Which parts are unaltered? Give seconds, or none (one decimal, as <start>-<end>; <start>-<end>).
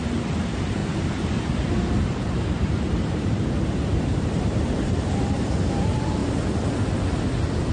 6.2-7.7